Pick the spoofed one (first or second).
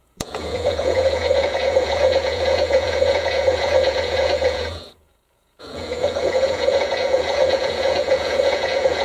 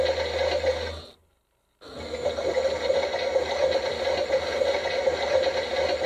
first